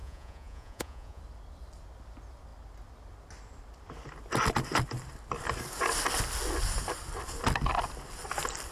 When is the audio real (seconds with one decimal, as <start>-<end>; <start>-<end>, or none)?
1.2-8.7